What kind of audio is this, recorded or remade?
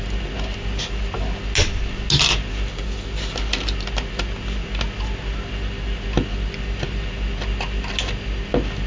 recorded